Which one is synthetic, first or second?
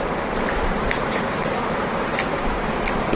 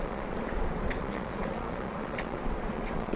second